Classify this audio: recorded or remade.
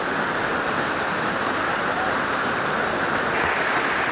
recorded